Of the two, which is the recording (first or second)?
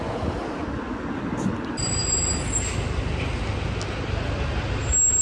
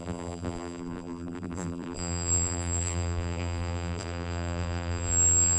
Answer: first